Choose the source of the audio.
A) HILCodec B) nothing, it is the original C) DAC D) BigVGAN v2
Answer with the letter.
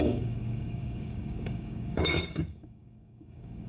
C